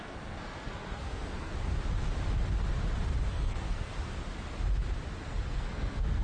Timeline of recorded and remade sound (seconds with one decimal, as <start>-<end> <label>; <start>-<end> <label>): 0.0-1.5 remade; 1.5-3.3 recorded; 3.3-3.9 remade; 3.9-5.2 recorded; 5.2-6.2 remade